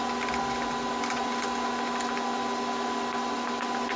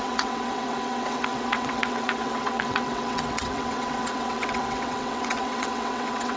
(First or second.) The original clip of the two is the first